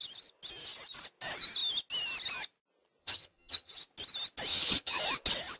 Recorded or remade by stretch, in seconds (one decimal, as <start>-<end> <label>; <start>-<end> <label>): 0.0-3.0 recorded; 3.0-3.7 remade; 3.7-4.5 recorded; 4.5-5.0 remade; 5.0-5.6 recorded